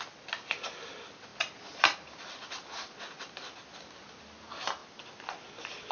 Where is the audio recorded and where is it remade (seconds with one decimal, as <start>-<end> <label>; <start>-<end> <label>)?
0.0-5.9 recorded